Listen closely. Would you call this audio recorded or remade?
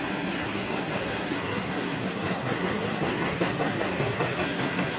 remade